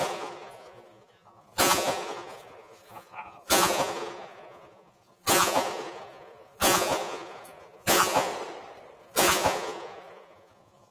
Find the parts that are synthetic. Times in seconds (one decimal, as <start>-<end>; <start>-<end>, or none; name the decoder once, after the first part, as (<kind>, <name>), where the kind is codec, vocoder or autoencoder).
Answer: 0.0-8.3 (vocoder, Vocos); 9.0-10.9